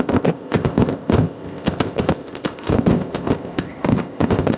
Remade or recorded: remade